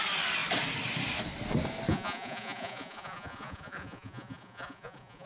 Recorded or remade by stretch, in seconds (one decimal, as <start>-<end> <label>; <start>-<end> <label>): 0.0-1.9 recorded; 1.9-5.3 remade